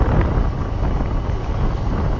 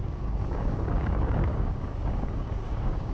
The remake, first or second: second